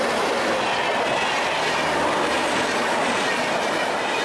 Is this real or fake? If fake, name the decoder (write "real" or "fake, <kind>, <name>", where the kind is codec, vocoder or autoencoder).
real